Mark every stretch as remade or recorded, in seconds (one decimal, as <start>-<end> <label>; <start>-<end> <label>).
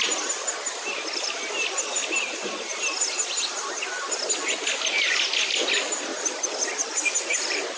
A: 0.0-2.0 recorded; 2.0-2.8 remade; 2.8-6.1 recorded; 6.1-7.8 remade